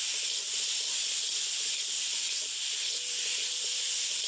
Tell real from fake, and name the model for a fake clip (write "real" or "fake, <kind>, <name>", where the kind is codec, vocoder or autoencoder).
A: real